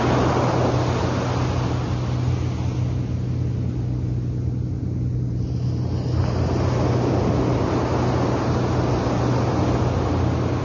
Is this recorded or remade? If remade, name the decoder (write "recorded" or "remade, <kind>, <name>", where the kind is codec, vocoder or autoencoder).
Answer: recorded